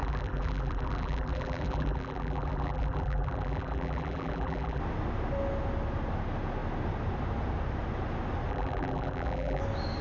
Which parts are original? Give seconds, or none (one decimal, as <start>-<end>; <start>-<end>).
4.8-8.5; 9.6-10.0